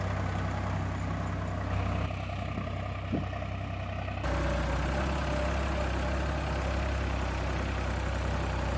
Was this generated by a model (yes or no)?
no